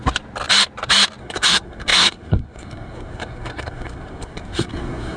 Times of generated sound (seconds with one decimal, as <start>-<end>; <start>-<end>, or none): 1.2-5.2